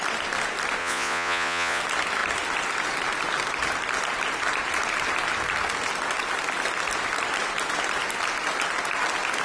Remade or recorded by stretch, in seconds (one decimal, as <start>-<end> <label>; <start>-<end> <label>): 0.0-0.8 recorded; 0.8-1.8 remade; 1.8-9.4 recorded